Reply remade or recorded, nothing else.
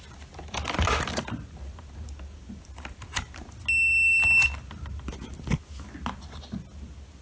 recorded